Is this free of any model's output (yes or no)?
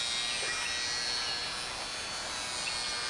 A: yes